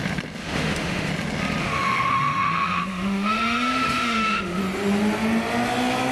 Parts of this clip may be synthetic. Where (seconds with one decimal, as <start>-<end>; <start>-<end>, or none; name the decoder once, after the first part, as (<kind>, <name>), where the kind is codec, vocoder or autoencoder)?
0.4-1.1 (autoencoder, DAC-VAE); 1.6-4.6